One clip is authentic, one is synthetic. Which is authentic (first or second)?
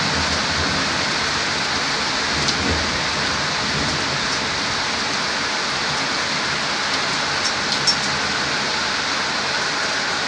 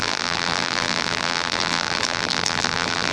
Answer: first